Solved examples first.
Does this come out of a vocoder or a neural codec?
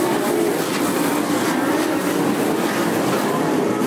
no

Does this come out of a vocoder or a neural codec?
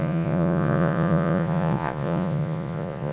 yes